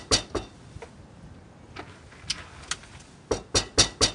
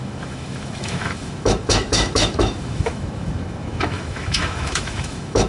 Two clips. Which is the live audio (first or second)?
first